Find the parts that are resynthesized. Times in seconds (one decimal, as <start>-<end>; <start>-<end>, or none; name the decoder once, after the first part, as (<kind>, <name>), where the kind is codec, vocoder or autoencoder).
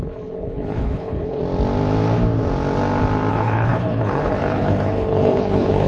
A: 0.0-1.4 (codec, HILCodec); 3.3-5.9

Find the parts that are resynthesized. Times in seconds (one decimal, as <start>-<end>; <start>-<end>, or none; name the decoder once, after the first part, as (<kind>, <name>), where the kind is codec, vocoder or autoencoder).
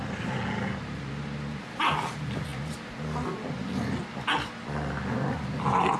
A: none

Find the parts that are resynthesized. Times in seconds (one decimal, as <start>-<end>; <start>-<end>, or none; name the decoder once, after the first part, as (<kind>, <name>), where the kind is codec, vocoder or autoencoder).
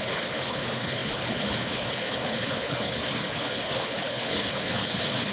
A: 0.0-5.3 (codec, HILCodec)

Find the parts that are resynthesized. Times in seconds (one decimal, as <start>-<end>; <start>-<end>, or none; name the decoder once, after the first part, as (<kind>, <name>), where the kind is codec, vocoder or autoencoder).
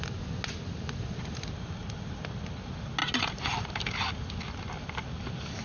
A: none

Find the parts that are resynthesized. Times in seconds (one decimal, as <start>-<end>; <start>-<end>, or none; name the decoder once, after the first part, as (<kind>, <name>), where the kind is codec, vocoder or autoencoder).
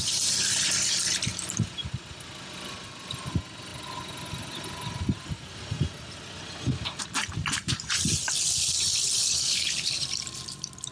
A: 9.2-9.9 (codec, HILCodec)